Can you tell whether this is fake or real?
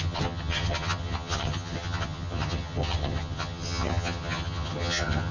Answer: fake